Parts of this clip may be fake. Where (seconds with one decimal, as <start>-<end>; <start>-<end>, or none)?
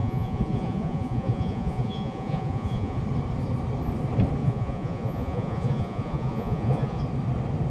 0.0-3.0; 4.4-7.0